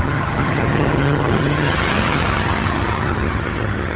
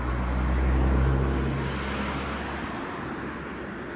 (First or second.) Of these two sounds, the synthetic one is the first